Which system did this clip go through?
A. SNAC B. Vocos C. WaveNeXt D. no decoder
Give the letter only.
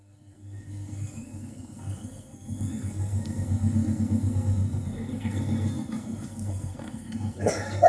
A